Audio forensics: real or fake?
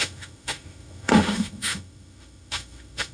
fake